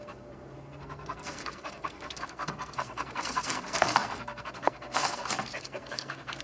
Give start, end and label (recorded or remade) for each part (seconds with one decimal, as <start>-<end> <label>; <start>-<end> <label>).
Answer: 0.0-6.4 remade